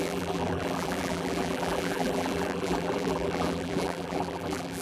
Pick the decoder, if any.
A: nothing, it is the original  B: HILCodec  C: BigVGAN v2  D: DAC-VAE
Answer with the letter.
C